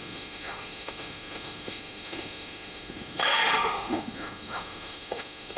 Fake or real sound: fake